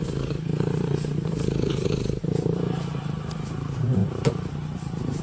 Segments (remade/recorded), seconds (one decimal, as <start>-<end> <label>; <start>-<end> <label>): 0.0-5.2 remade